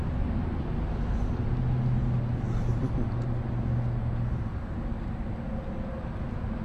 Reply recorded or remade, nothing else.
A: recorded